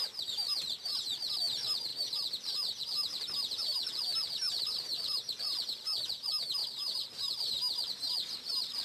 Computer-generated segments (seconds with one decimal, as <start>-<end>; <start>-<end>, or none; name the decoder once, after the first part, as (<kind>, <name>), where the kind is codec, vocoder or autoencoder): none